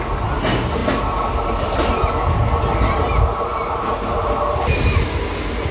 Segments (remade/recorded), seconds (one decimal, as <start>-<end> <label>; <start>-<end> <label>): 0.0-5.7 recorded